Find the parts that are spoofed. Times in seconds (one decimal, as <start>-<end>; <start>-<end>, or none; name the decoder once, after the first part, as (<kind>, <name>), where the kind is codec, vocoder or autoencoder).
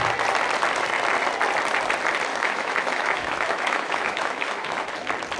2.3-4.9 (autoencoder, DAC-VAE)